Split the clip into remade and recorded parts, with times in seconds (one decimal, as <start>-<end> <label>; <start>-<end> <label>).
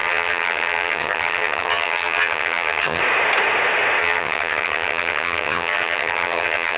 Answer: 0.0-3.0 remade; 3.0-4.0 recorded; 4.0-6.8 remade